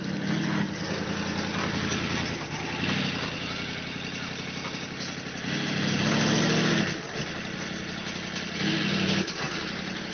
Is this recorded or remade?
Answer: recorded